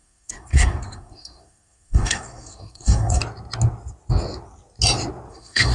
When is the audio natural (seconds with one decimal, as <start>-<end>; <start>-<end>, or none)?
3.2-5.3